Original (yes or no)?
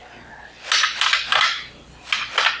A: yes